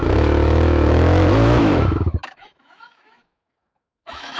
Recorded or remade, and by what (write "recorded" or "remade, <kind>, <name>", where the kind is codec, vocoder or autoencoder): remade, autoencoder, DAC-VAE